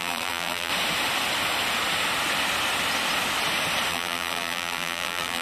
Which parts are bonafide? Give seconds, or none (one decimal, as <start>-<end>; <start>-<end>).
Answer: 0.7-3.9